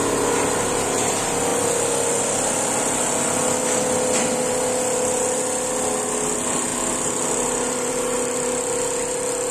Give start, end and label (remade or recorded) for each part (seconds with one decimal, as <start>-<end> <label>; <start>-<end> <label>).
0.0-9.5 recorded